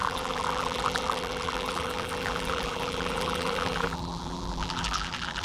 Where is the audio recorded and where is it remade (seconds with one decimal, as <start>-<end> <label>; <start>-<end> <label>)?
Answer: 0.0-5.4 remade